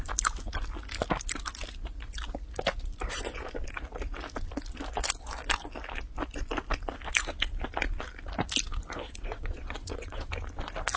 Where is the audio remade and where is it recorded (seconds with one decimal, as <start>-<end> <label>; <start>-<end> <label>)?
0.0-9.0 recorded; 9.0-10.3 remade; 10.3-11.0 recorded